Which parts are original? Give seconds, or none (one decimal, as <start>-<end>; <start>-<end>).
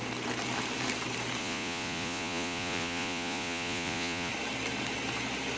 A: 0.0-1.4; 4.3-5.6